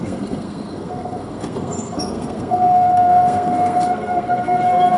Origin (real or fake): fake